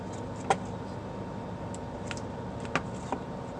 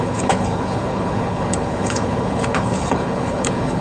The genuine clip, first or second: first